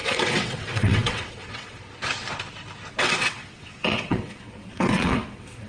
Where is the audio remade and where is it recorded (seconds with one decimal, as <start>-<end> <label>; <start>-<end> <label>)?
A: 0.0-1.8 remade; 1.8-2.9 recorded; 2.9-5.7 remade